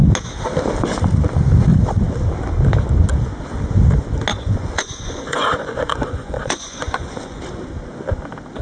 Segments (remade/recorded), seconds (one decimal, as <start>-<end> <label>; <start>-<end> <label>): 0.0-4.3 recorded; 4.3-7.4 remade; 7.4-8.6 recorded